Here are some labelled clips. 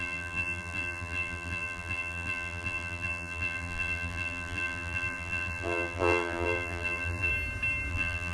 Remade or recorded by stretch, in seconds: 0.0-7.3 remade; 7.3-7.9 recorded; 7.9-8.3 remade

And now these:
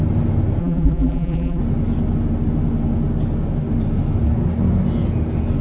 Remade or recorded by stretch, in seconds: 0.0-0.6 recorded; 0.6-1.6 remade; 1.6-5.6 recorded